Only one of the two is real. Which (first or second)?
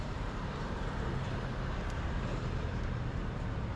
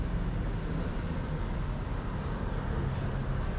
second